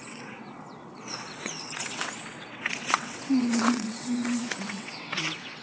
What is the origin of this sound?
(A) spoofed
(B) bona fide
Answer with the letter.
A